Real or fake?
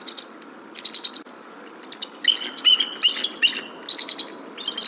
real